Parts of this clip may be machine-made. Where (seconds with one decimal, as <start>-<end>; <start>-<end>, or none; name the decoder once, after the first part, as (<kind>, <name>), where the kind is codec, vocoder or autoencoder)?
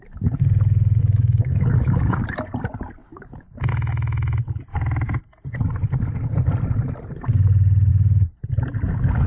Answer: 1.0-2.2 (autoencoder, DAC-VAE); 3.0-3.7